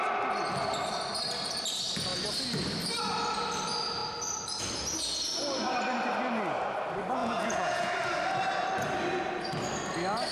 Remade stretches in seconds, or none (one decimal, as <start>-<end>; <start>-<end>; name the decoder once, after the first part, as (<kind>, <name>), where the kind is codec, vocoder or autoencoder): 7.2-7.9 (vocoder, Vocos)